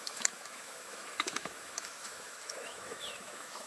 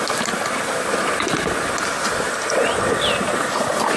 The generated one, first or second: first